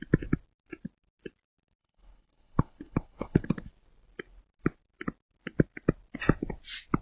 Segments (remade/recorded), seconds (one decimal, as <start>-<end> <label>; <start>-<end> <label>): 0.0-1.8 recorded; 1.8-3.7 remade; 3.7-7.0 recorded

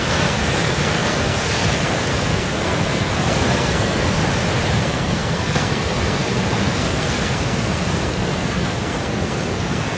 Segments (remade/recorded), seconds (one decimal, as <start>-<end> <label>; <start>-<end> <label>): 0.0-4.2 remade; 4.2-4.7 recorded; 4.7-10.0 remade

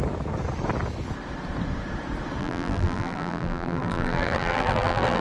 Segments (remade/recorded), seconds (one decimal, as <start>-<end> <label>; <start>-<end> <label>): 0.0-2.4 recorded; 2.4-5.2 remade